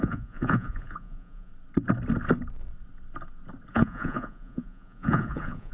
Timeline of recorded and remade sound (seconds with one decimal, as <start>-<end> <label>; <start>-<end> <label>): 0.0-1.5 remade; 1.5-3.7 recorded; 3.7-5.7 remade